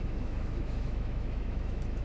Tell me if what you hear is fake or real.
fake